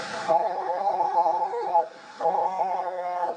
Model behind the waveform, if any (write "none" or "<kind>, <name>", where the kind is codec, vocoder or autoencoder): codec, SNAC